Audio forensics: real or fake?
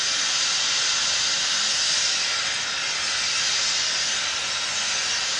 real